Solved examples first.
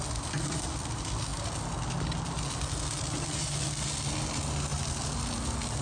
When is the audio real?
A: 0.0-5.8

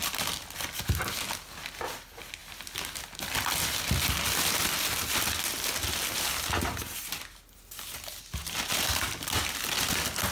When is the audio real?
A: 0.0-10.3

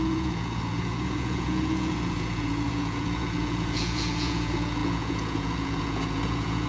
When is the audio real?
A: none